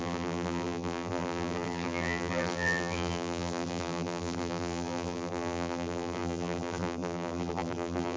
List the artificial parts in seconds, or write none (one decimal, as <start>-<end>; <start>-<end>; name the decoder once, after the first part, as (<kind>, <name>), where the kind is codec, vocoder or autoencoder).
0.0-8.2 (vocoder, BigVGAN v2)